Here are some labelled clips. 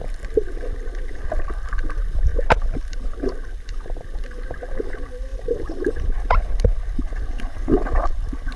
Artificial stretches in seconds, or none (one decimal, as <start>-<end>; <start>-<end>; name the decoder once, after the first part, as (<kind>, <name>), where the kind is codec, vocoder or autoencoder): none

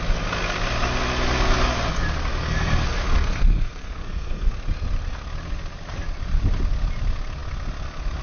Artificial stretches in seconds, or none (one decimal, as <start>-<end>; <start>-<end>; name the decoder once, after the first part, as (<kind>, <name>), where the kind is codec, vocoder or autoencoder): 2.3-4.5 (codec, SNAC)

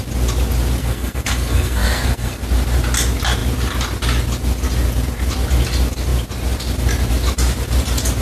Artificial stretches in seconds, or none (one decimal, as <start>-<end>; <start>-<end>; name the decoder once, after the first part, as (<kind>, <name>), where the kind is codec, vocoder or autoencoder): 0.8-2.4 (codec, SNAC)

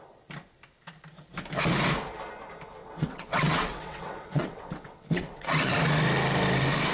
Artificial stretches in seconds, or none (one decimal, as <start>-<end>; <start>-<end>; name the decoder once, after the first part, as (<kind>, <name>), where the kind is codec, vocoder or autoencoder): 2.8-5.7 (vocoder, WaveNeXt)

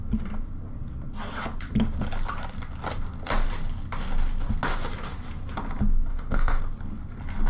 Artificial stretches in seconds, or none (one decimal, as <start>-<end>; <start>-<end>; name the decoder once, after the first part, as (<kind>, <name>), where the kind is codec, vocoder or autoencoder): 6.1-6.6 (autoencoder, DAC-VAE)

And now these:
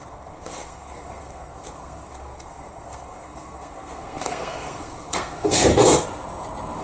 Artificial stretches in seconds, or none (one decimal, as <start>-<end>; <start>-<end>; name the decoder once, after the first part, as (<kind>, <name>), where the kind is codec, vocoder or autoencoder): 0.0-5.7 (codec, SNAC)